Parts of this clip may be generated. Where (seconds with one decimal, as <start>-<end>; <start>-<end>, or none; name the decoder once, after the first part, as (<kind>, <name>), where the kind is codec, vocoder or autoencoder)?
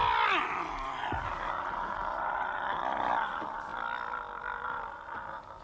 none